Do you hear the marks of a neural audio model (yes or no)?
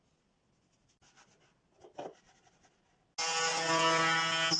no